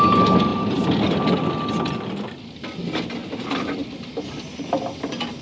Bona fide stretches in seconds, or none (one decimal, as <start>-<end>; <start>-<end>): 0.0-5.4